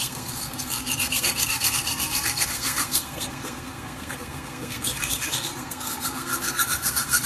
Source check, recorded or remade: remade